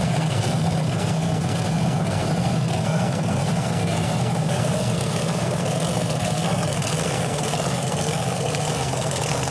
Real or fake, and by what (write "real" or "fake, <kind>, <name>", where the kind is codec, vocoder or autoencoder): fake, codec, SNAC